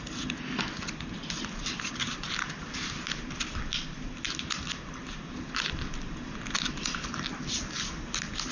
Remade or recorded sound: recorded